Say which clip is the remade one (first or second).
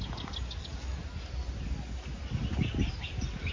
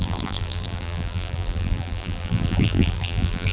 second